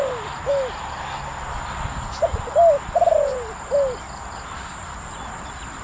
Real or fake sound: real